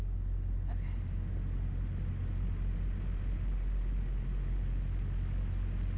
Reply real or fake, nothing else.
real